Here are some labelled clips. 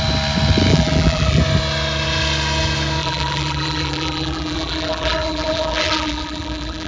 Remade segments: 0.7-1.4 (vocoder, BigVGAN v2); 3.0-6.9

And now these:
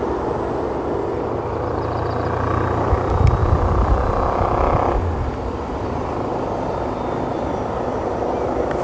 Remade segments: 3.4-8.8 (vocoder, BigVGAN v2)

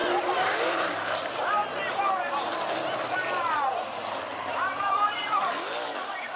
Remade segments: 0.0-1.3 (vocoder, BigVGAN v2); 4.3-5.5

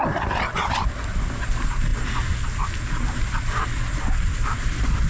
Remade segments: 0.0-0.7 (vocoder, BigVGAN v2)

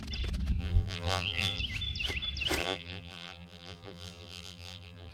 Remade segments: 0.6-1.6 (vocoder, BigVGAN v2); 2.6-5.1

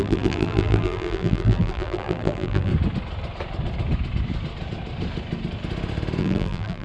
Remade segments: 0.0-2.7 (vocoder, BigVGAN v2); 6.2-6.8